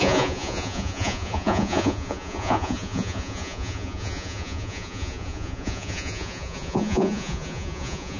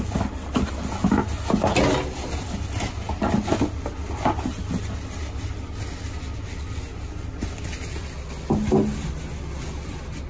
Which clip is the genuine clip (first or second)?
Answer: second